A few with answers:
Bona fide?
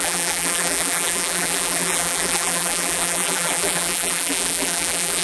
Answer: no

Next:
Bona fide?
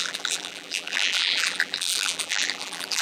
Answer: no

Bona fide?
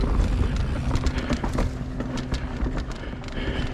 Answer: yes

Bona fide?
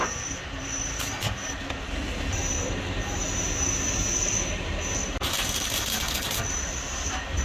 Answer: yes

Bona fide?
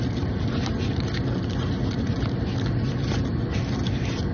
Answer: yes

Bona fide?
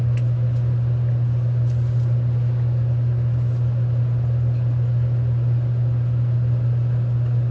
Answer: yes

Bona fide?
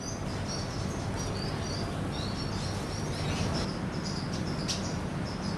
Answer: yes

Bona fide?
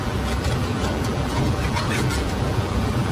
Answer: no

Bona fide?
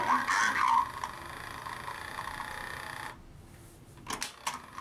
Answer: yes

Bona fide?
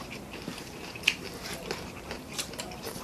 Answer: no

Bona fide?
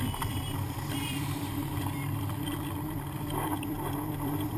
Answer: no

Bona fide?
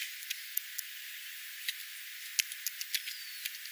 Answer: yes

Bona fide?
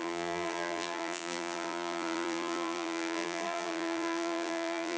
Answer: no